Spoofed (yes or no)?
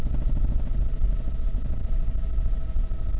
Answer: no